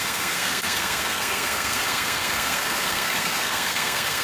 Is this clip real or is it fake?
fake